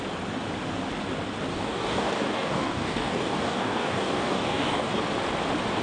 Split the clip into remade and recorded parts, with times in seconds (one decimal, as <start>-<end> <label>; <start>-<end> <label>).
0.0-1.5 recorded; 1.5-5.0 remade; 5.0-5.8 recorded